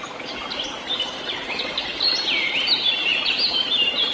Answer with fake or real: real